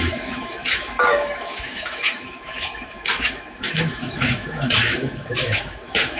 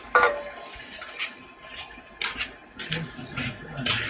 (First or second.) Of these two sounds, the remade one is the first